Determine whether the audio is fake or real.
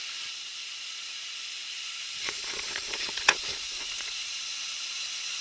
fake